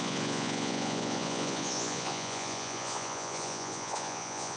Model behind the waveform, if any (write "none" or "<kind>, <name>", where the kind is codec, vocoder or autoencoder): vocoder, Vocos